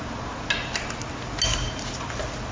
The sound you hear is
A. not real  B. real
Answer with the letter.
B